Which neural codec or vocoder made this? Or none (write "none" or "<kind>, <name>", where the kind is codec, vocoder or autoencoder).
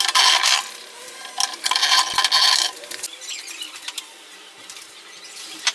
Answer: none